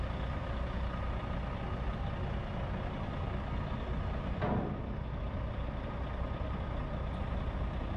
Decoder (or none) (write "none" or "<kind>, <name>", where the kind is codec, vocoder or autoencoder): none